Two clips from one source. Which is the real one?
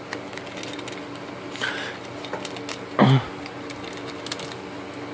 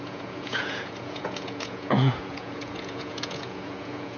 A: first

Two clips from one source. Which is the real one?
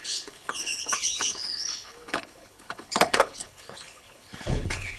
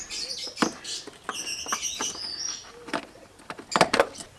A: second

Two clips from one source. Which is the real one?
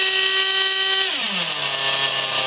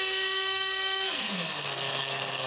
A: first